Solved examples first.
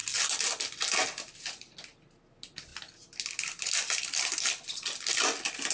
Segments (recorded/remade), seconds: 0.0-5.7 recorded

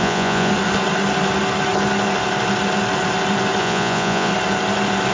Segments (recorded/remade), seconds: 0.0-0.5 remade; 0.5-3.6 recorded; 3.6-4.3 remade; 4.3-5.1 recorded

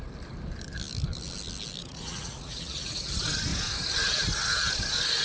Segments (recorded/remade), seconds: 0.0-1.8 recorded; 1.8-3.1 remade; 3.1-5.2 recorded

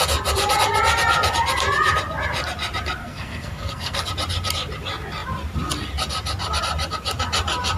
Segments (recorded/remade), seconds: 0.0-3.0 recorded; 3.0-4.1 remade; 4.1-7.8 recorded

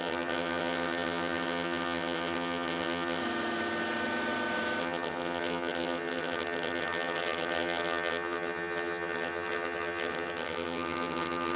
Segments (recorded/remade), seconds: 0.0-3.2 remade; 3.2-4.8 recorded; 4.8-11.6 remade

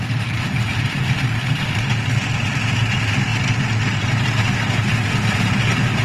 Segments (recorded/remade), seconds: 0.0-3.3 remade; 3.3-4.0 recorded; 4.0-6.0 remade

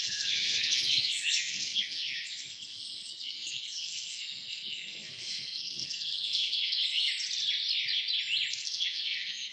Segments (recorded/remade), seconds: 0.0-7.1 remade; 7.1-8.5 recorded; 8.5-9.5 remade